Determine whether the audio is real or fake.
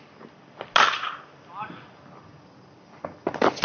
real